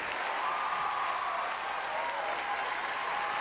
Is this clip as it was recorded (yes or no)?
yes